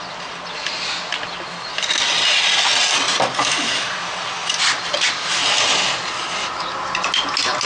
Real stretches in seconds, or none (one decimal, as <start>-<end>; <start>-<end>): 0.0-7.7